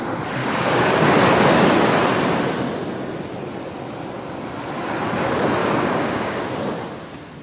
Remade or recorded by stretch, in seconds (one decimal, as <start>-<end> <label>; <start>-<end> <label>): 0.0-0.4 recorded; 0.4-1.2 remade; 1.2-5.6 recorded; 5.6-6.4 remade; 6.4-7.4 recorded